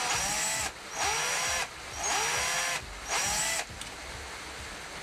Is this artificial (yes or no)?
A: no